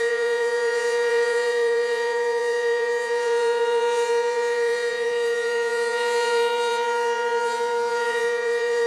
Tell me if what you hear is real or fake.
fake